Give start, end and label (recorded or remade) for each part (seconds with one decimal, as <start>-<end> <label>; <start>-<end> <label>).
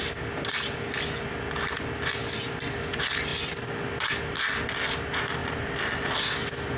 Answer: 0.0-6.8 recorded